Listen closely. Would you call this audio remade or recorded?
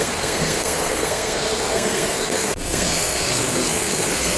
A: remade